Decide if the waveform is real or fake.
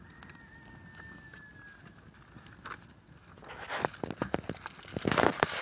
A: real